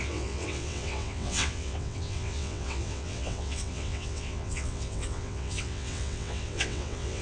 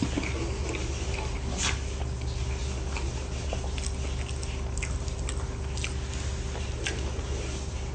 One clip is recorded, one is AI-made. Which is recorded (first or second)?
second